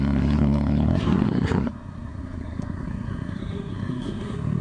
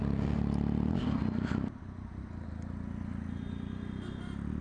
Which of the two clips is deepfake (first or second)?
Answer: first